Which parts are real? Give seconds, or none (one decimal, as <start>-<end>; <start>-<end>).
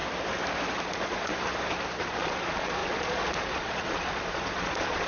0.0-0.8; 1.3-2.0